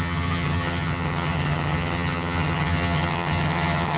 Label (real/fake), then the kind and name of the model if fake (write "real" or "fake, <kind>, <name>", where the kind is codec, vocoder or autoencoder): fake, vocoder, HiFi-GAN